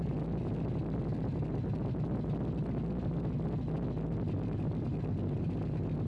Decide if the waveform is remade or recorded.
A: recorded